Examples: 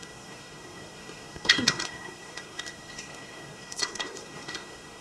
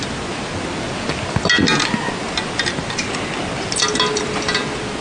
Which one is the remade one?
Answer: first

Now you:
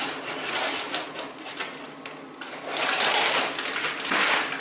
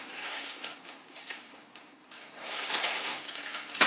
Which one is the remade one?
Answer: second